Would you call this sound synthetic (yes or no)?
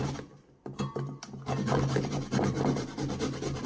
no